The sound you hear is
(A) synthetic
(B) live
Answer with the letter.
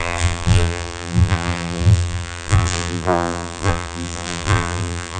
A